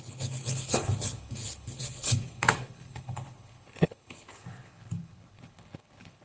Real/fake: fake